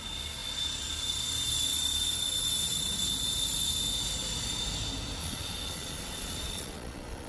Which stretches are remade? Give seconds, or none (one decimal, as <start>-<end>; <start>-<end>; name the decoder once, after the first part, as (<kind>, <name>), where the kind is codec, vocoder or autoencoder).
5.2-7.3 (vocoder, Vocos)